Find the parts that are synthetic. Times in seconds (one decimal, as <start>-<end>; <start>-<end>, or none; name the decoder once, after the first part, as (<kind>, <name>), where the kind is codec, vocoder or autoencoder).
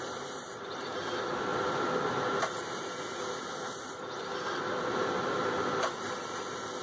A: none